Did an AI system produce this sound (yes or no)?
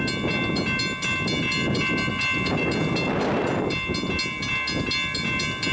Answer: no